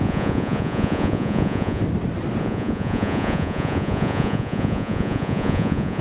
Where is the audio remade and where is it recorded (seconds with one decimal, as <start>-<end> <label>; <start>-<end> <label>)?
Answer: 0.0-1.8 remade; 1.8-2.4 recorded; 2.4-6.0 remade